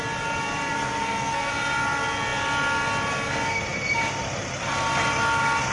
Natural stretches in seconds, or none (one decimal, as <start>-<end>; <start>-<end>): 0.0-0.7; 1.5-5.7